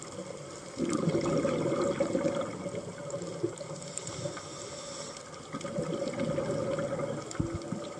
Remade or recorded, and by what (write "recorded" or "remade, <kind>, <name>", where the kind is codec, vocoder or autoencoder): recorded